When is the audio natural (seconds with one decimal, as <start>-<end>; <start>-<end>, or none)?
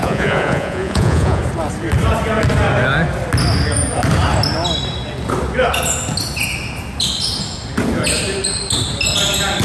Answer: 1.4-9.6